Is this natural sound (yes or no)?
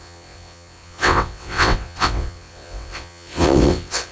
no